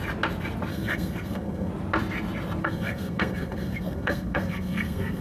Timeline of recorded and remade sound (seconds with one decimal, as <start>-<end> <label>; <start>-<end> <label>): 0.0-0.7 recorded; 0.7-1.7 remade; 1.7-2.6 recorded; 2.6-5.2 remade